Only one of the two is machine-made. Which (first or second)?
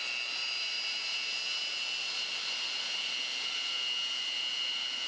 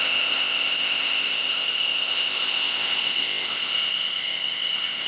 second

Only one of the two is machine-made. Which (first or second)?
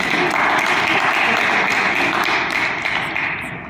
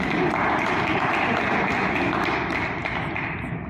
second